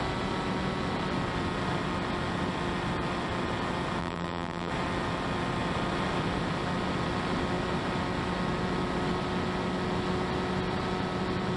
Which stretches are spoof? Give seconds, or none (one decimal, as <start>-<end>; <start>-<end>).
4.0-4.7